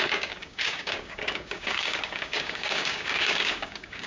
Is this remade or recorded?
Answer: remade